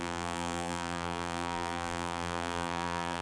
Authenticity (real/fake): fake